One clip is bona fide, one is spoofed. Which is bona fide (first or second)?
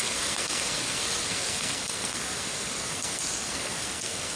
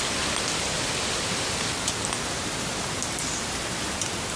second